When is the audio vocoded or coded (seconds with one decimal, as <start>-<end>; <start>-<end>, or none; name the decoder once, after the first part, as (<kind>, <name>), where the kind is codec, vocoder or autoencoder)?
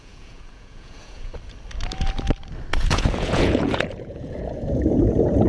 0.0-1.3 (vocoder, Vocos); 2.8-5.5